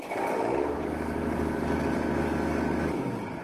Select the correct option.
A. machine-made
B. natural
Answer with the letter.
A